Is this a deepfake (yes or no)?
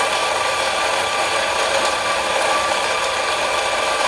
no